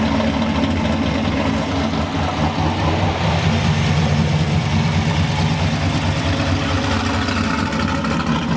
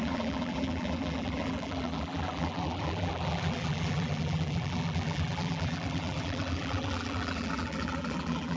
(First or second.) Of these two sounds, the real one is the first